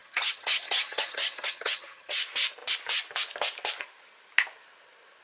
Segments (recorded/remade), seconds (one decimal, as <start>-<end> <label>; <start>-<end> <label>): 0.0-2.1 remade; 2.1-5.2 recorded